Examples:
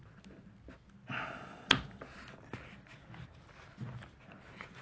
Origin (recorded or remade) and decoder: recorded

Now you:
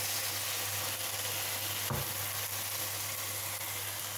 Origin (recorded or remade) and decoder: recorded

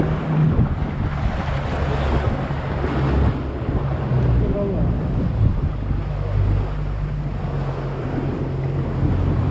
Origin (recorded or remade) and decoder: recorded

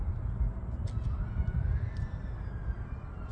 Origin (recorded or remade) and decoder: recorded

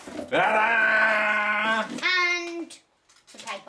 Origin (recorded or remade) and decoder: recorded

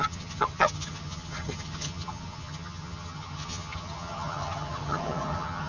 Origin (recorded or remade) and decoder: remade, vocoder, HiFi-GAN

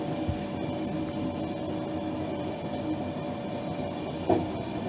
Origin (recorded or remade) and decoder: recorded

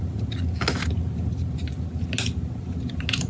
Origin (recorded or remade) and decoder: recorded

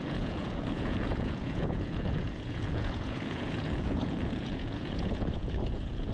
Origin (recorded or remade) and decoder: remade, vocoder, Vocos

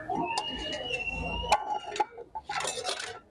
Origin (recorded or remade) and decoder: recorded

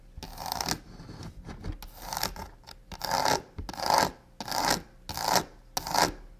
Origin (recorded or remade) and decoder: recorded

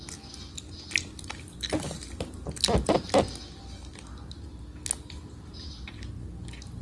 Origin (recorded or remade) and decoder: recorded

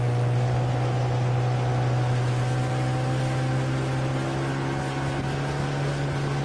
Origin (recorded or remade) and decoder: recorded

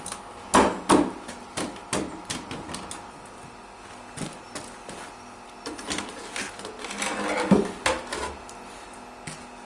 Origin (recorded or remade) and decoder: recorded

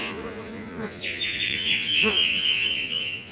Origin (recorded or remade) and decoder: remade, vocoder, Vocos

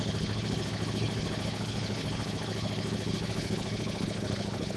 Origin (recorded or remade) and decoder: remade, codec, HILCodec